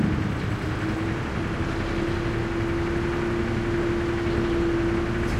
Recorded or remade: recorded